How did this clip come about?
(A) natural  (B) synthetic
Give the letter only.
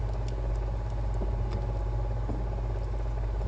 A